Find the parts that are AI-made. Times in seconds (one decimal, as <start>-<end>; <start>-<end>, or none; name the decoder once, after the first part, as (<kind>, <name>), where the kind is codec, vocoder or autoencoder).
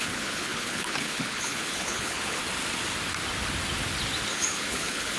0.0-2.4 (codec, HILCodec); 4.3-5.2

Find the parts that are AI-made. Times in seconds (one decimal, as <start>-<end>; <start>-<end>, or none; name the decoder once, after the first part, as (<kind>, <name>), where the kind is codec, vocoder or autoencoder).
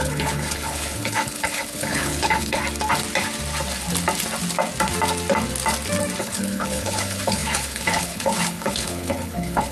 0.0-2.6 (codec, HILCodec); 6.2-9.7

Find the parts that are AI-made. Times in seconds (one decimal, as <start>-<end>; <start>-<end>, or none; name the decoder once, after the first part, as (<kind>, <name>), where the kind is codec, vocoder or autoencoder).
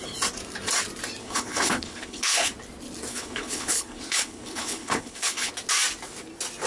1.2-2.5 (codec, HILCodec); 3.1-5.5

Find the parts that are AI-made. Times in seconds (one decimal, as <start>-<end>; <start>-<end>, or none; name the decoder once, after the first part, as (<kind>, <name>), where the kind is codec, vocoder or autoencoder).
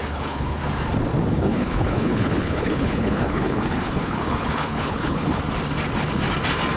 0.0-0.6 (codec, HILCodec); 1.3-5.4